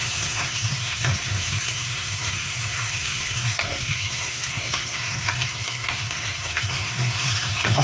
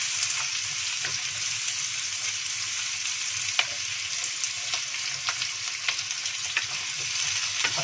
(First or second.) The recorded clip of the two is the second